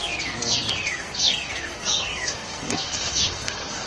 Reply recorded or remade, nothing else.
remade